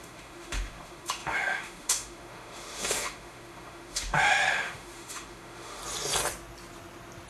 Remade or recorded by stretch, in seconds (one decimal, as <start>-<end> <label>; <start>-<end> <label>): 0.0-5.8 remade; 5.8-7.3 recorded